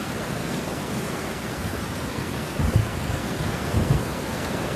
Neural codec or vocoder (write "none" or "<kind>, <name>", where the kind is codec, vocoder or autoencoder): codec, SNAC